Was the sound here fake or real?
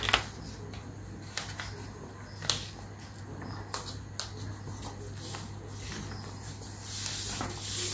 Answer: real